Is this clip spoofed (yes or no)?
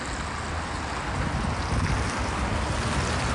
no